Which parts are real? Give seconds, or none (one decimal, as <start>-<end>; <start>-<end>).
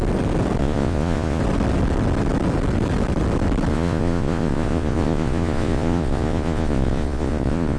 0.0-0.6; 1.4-3.7